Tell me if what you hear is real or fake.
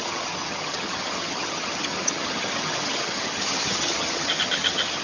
fake